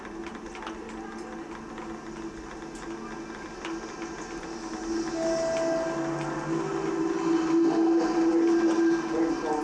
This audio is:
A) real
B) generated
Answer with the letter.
A